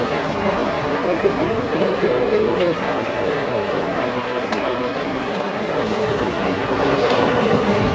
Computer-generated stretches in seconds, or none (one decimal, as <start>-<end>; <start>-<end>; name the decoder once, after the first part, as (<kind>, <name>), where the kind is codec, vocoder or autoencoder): 0.0-7.9 (codec, SNAC)